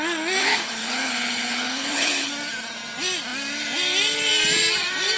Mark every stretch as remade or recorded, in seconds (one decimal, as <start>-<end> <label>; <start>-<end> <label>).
0.0-0.4 recorded; 0.4-2.3 remade; 2.3-5.2 recorded

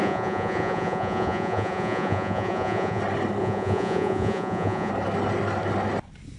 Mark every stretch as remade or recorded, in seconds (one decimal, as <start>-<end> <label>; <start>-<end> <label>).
0.0-3.0 remade; 3.0-3.4 recorded; 3.4-4.9 remade; 4.9-6.4 recorded

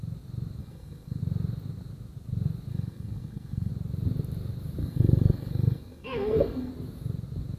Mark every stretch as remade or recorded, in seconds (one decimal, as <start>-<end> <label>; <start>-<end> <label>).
0.0-0.6 recorded; 0.6-1.2 remade; 1.2-2.7 recorded; 2.7-3.7 remade; 3.7-4.8 recorded; 4.8-6.7 remade; 6.7-7.6 recorded

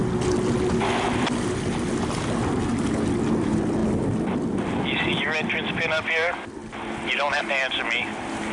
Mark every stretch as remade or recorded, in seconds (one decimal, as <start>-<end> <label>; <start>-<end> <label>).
0.0-8.5 recorded

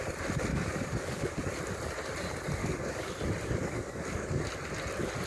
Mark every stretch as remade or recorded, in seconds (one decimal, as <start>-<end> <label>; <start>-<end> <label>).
0.0-0.5 recorded; 0.5-1.3 remade; 1.3-2.6 recorded; 2.6-3.1 remade; 3.1-3.6 recorded; 3.6-4.4 remade; 4.4-5.3 recorded

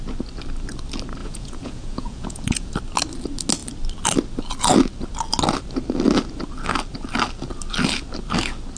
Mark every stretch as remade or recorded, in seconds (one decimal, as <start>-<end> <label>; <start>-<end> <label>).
0.0-1.2 recorded; 1.2-2.7 remade; 2.7-8.8 recorded

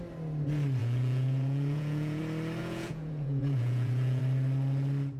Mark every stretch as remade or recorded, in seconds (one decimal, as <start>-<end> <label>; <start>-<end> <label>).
0.0-0.8 recorded; 0.8-2.2 remade; 2.2-2.6 recorded; 2.6-4.2 remade; 4.2-5.2 recorded